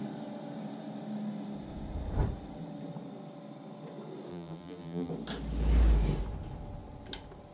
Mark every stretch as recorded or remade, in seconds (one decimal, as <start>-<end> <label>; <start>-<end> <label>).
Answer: 0.0-4.3 recorded; 4.3-5.1 remade; 5.1-7.5 recorded